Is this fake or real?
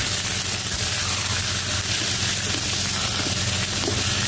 real